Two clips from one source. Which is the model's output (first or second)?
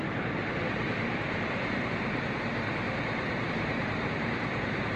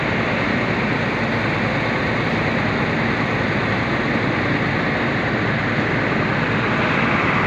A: first